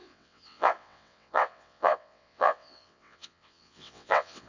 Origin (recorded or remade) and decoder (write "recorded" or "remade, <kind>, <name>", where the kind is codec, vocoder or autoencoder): remade, vocoder, WaveNeXt